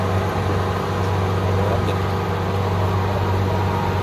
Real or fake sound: real